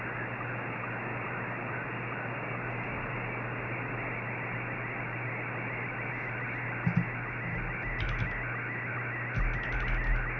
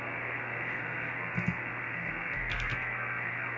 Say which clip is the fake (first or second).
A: second